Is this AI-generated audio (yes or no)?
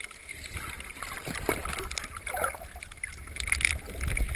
no